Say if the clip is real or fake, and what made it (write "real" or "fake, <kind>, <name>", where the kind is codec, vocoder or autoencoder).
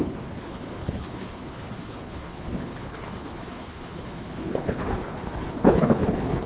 fake, codec, HILCodec